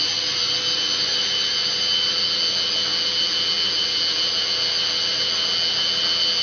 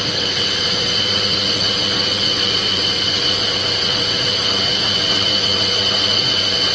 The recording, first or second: first